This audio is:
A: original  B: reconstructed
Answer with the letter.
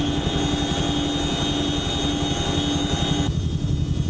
A